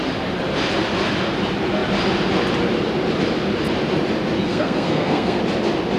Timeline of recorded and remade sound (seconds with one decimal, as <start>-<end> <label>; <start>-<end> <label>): 0.0-4.5 recorded; 4.5-5.4 remade; 5.4-6.0 recorded